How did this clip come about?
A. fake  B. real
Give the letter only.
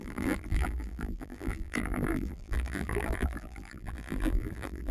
A